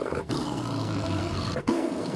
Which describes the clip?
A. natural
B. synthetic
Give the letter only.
B